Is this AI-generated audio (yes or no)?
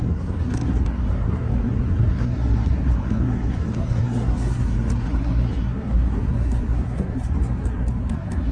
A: yes